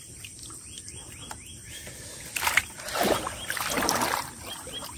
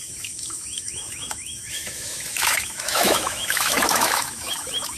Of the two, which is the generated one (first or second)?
second